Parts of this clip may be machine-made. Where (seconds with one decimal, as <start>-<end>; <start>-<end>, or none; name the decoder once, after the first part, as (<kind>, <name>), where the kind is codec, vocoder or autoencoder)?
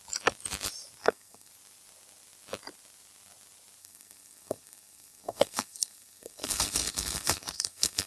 1.0-1.5 (codec, SNAC); 3.8-8.1